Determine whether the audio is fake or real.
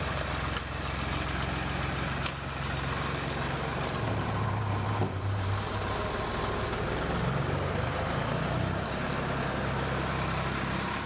fake